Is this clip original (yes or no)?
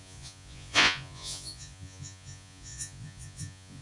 no